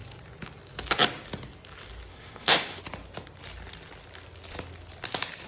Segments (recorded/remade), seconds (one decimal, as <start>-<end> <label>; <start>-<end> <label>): 0.0-2.1 recorded; 2.1-2.8 remade; 2.8-5.5 recorded